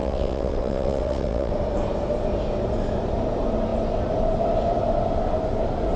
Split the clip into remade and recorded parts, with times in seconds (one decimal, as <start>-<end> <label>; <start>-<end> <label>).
0.0-1.5 remade; 1.5-6.0 recorded